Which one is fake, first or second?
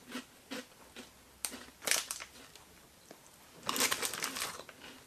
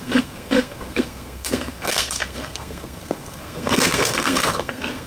second